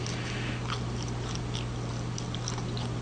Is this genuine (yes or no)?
yes